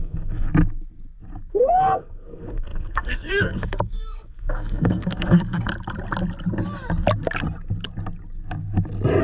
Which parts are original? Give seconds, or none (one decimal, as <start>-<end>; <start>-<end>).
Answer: 0.5-1.5; 5.7-9.2